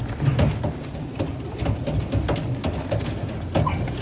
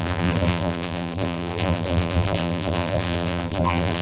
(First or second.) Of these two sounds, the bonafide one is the first